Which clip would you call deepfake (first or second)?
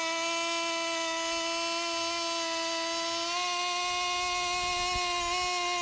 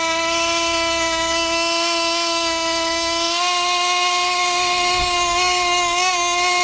second